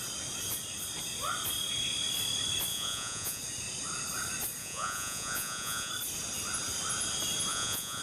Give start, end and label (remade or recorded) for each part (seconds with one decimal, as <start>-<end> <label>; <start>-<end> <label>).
0.0-2.7 recorded; 2.7-3.4 remade; 3.4-4.6 recorded; 4.6-5.9 remade; 5.9-7.5 recorded; 7.5-8.0 remade

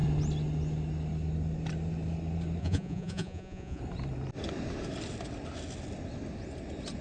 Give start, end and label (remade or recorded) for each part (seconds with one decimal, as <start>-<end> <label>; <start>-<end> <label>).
0.0-2.6 recorded; 2.6-3.8 remade; 3.8-7.0 recorded

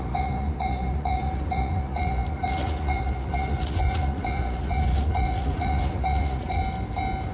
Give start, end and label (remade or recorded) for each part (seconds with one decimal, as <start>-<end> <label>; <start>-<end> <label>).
0.0-6.6 remade; 6.6-7.3 recorded

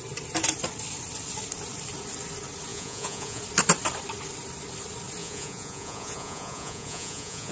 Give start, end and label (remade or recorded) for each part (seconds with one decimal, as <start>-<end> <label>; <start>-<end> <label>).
0.0-2.7 recorded; 2.7-3.4 remade; 3.4-5.2 recorded; 5.2-7.5 remade

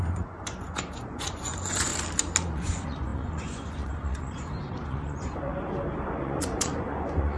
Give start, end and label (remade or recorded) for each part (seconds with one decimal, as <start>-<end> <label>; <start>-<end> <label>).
0.0-1.9 remade; 1.9-2.5 recorded; 2.5-5.5 remade; 5.5-6.2 recorded; 6.2-7.4 remade